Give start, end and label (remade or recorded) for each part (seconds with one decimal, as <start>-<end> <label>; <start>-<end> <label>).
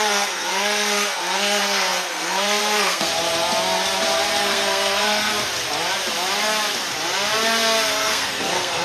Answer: 0.0-3.1 remade; 3.1-4.4 recorded; 4.4-5.3 remade; 5.3-7.9 recorded; 7.9-8.8 remade